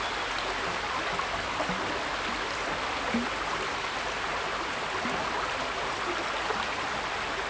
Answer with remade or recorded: recorded